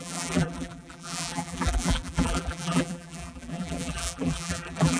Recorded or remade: remade